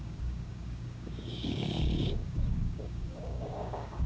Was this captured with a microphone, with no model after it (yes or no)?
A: no